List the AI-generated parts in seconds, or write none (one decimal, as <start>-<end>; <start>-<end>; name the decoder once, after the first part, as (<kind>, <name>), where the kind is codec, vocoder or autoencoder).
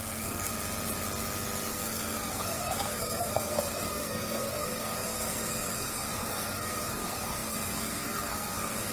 0.0-0.5 (codec, SNAC); 1.7-8.9